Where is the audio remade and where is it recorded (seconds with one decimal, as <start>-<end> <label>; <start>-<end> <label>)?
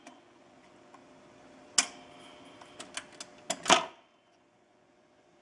0.0-1.0 remade; 1.0-4.2 recorded; 4.2-5.4 remade